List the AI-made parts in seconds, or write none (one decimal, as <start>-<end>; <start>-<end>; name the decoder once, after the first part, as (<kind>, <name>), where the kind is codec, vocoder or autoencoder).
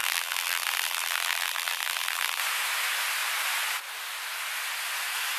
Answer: 0.0-2.4 (vocoder, BigVGAN v2)